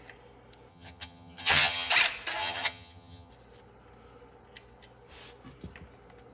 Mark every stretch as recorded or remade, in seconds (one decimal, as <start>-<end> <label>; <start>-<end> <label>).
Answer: 0.0-0.7 recorded; 0.7-1.9 remade; 1.9-2.4 recorded; 2.4-3.3 remade; 3.3-6.3 recorded